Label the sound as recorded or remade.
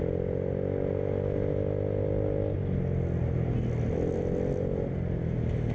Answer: recorded